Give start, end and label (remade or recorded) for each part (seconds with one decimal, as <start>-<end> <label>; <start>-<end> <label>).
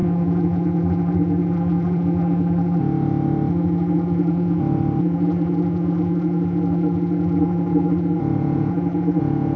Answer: 0.0-2.8 remade; 2.8-3.5 recorded; 3.5-4.6 remade; 4.6-5.0 recorded; 5.0-8.2 remade; 8.2-8.7 recorded; 8.7-9.2 remade; 9.2-9.6 recorded